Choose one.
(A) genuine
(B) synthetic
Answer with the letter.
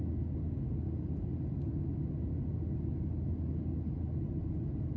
A